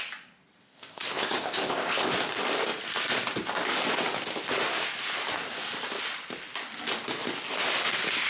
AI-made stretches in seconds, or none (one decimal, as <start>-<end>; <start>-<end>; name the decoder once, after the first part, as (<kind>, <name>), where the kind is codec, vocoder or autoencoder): 0.6-2.1 (codec, ZipCodec)